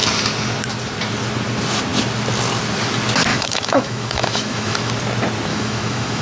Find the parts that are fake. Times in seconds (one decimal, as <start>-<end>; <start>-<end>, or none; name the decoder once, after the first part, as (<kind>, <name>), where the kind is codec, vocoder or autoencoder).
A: 3.3-4.9 (autoencoder, DAC-VAE); 5.5-6.2